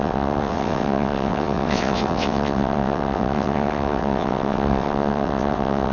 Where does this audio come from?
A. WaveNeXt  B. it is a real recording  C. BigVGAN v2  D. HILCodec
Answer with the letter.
A